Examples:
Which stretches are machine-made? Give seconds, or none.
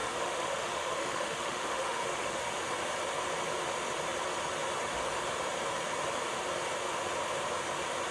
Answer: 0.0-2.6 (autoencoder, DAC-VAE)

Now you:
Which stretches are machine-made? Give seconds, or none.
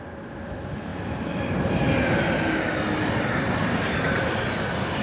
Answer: none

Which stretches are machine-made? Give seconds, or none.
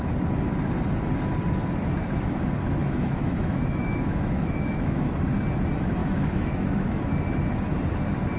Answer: 2.8-5.1 (autoencoder, DAC-VAE); 6.0-7.0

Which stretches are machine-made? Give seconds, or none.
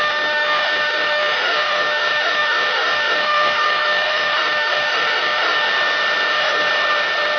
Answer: 0.0-5.7 (autoencoder, DAC-VAE); 6.3-6.7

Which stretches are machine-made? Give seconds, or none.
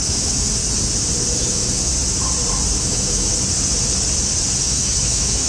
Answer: 0.0-0.6 (autoencoder, DAC-VAE); 1.3-1.9; 2.8-3.3; 4.6-5.5